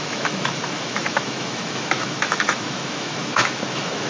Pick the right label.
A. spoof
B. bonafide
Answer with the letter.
A